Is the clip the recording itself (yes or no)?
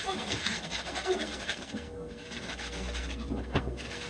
no